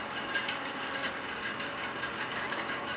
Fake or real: fake